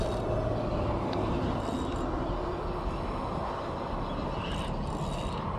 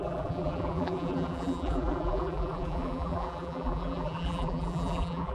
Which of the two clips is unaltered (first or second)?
first